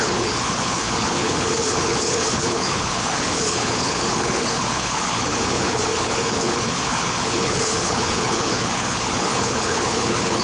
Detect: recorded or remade remade